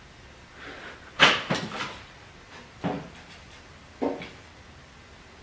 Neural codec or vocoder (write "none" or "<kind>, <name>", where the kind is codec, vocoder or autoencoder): none